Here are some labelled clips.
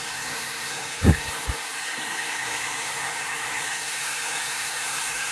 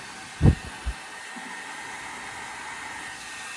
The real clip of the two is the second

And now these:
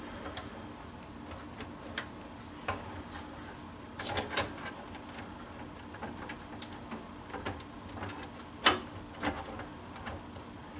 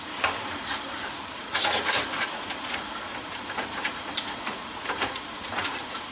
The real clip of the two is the first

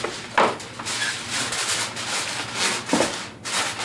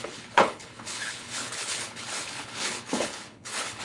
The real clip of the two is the first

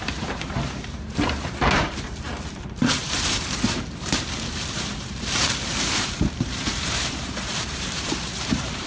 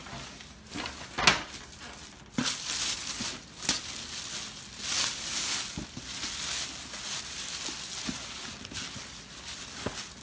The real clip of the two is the second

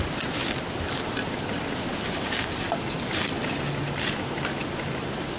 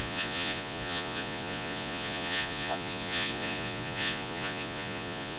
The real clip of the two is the first